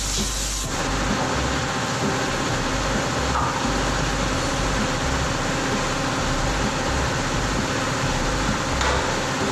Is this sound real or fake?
real